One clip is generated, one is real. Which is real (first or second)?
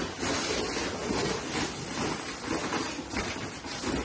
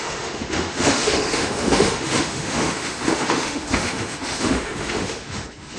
first